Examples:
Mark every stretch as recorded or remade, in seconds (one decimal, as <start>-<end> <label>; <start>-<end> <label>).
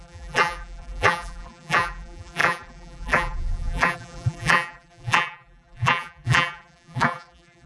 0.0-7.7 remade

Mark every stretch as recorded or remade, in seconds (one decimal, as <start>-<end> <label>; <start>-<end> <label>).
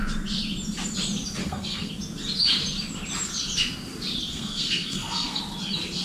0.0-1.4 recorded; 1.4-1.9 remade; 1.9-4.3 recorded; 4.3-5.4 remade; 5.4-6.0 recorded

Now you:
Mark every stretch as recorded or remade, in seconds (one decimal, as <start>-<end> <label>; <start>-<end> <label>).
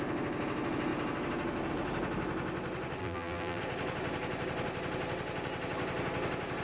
0.0-3.0 recorded; 3.0-3.6 remade; 3.6-6.6 recorded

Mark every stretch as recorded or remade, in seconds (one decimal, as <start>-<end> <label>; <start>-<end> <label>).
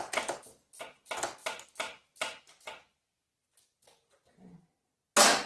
0.0-5.5 recorded